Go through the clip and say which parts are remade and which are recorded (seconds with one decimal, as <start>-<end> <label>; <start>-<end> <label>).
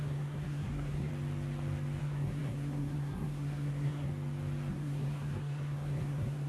0.0-1.1 remade; 1.1-2.0 recorded; 2.0-4.1 remade; 4.1-4.7 recorded; 4.7-6.5 remade